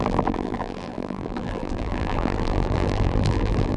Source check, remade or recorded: remade